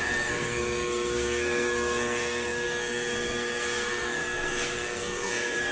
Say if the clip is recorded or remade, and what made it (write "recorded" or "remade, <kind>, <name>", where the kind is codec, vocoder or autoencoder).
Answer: remade, codec, SNAC